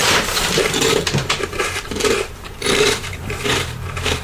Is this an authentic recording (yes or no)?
no